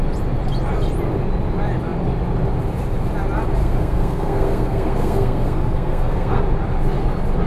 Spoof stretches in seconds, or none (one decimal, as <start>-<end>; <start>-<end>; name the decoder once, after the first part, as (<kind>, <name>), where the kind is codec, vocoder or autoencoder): 3.6-6.4 (codec, SNAC)